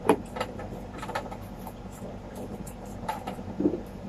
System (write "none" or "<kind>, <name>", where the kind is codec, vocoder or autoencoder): vocoder, BigVGAN v2